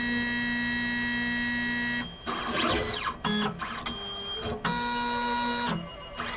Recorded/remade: recorded